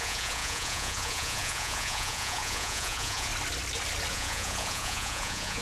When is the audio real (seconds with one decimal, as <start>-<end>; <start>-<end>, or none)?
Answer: 3.3-4.1